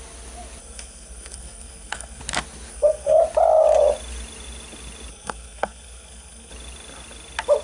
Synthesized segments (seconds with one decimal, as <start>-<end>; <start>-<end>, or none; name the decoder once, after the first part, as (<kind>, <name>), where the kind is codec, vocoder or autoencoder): 0.6-2.2 (codec, SNAC); 2.7-3.2; 5.1-6.5